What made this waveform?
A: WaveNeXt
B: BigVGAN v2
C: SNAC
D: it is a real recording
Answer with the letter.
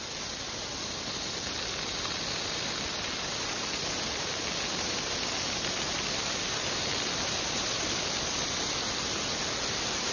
D